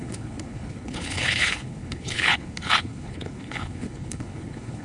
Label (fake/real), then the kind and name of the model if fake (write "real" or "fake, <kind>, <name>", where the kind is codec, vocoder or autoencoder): fake, codec, HILCodec